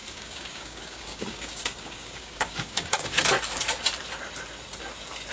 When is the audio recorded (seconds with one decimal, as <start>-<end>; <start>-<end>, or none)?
3.2-5.3